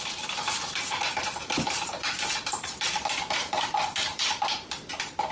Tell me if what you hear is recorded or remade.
remade